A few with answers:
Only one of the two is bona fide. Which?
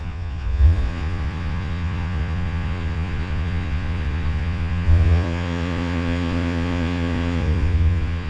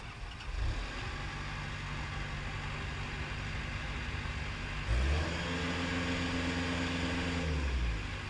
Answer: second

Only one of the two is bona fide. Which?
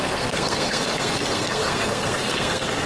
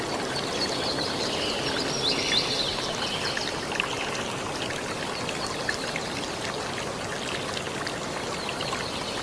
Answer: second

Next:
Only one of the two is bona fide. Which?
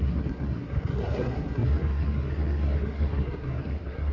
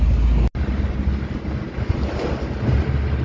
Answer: second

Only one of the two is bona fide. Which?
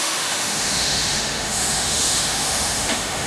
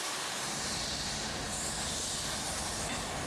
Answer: second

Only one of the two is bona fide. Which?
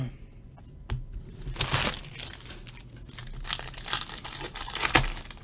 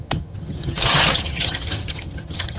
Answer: first